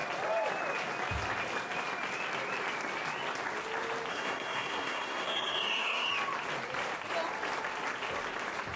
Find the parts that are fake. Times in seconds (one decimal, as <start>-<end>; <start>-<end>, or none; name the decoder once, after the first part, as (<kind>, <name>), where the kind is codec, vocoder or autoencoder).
4.1-6.1 (codec, SNAC)